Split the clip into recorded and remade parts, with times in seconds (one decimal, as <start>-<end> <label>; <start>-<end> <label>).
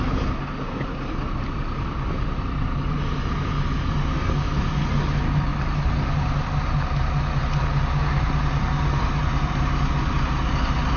0.0-11.0 recorded